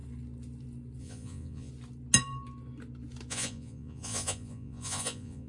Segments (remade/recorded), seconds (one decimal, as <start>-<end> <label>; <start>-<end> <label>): 0.0-1.0 recorded; 1.0-1.7 remade; 1.7-3.3 recorded; 3.3-5.5 remade